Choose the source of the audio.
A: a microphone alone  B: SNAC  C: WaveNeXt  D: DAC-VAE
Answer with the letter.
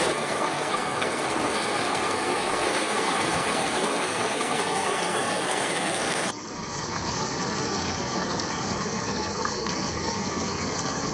B